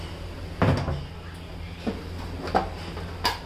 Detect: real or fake real